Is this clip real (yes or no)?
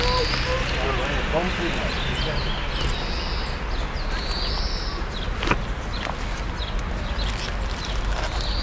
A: yes